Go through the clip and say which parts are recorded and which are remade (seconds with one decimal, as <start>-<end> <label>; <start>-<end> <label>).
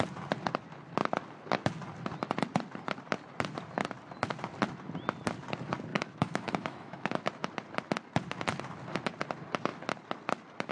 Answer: 0.0-5.9 recorded; 5.9-7.2 remade; 7.2-10.7 recorded